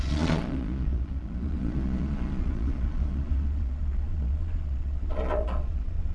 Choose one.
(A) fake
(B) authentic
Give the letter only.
A